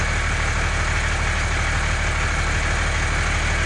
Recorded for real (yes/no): yes